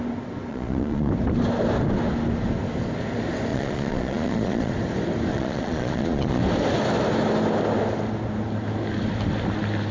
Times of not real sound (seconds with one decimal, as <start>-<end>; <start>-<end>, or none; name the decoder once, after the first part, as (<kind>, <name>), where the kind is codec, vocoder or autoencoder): 0.5-1.1 (vocoder, Vocos); 3.5-4.7; 5.3-6.4